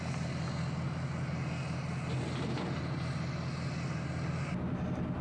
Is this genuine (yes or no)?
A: yes